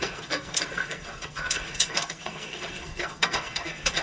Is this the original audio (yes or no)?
no